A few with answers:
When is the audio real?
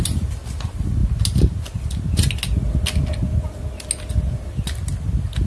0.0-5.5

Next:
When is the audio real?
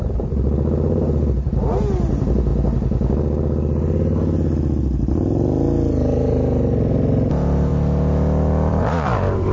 2.5-5.9; 7.7-8.7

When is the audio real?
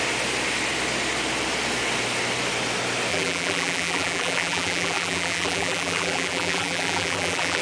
0.0-3.1